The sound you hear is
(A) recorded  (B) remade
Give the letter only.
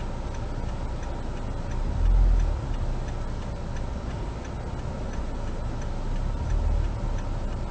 A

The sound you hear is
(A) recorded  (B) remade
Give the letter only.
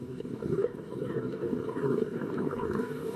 B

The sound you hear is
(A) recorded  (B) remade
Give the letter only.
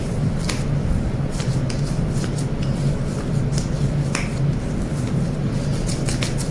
A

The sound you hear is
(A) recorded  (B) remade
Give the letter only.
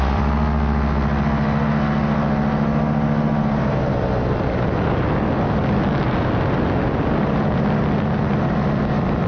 A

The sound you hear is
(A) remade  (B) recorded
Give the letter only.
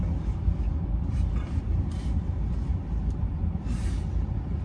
A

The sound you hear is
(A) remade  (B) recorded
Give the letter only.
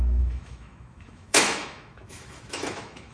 A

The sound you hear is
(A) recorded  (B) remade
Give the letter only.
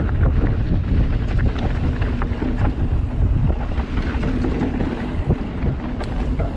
A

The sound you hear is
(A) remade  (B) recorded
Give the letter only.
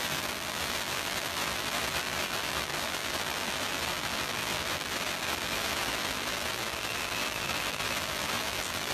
A